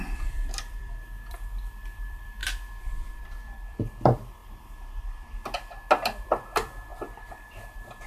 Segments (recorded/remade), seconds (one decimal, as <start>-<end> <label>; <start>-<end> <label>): 0.0-4.4 remade; 4.4-5.0 recorded; 5.0-5.4 remade; 5.4-6.2 recorded; 6.2-8.1 remade

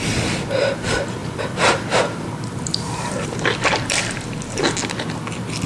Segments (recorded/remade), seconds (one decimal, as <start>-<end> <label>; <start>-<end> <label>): 0.0-1.2 recorded; 1.2-4.6 remade; 4.6-5.7 recorded

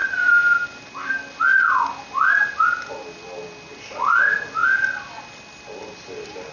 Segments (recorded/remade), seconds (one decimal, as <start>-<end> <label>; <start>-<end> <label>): 0.0-6.5 recorded

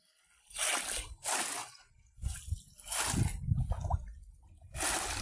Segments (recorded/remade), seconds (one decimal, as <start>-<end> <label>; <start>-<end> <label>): 0.0-5.2 recorded

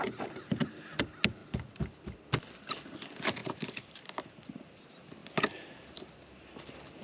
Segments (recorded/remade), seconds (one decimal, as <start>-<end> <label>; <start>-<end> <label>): 0.0-7.0 recorded

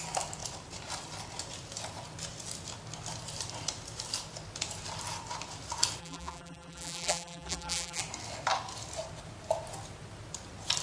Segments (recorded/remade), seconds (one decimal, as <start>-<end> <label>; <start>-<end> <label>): 0.0-6.0 recorded; 6.0-8.0 remade; 8.0-10.8 recorded

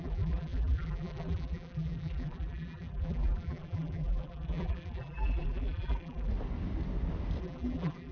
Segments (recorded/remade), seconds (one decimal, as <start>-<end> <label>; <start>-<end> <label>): 0.0-6.3 remade; 6.3-7.4 recorded; 7.4-8.1 remade

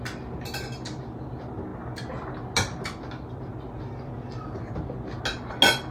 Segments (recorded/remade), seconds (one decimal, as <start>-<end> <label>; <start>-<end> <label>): 0.0-5.9 recorded